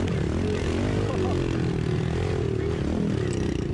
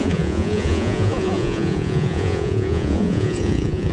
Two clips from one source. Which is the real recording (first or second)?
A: first